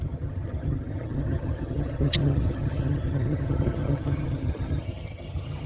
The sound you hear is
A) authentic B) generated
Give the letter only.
B